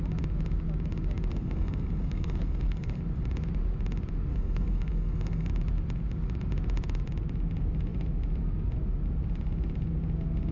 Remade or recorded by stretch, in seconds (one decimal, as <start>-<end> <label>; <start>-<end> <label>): 0.0-1.3 recorded; 1.3-3.0 remade; 3.0-4.3 recorded; 4.3-5.5 remade; 5.5-10.5 recorded